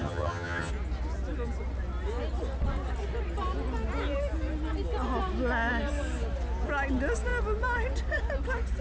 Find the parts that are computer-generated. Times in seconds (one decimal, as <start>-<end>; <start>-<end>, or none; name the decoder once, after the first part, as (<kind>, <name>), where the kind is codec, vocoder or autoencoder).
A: 0.0-0.7 (vocoder, HiFi-GAN)